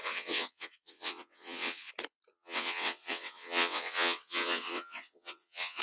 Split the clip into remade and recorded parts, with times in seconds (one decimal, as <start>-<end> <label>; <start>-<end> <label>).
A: 0.0-1.9 remade; 1.9-2.3 recorded; 2.3-5.8 remade

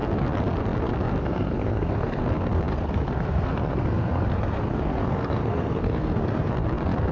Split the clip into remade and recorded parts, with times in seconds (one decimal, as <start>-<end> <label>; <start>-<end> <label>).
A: 0.0-1.2 recorded; 1.2-2.2 remade; 2.2-2.7 recorded; 2.7-6.5 remade; 6.5-7.1 recorded

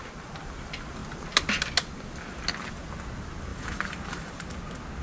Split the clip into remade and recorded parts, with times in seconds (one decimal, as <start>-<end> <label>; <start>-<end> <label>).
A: 0.0-3.5 recorded; 3.5-4.6 remade; 4.6-5.0 recorded